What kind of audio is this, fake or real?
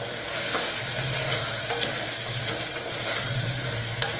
real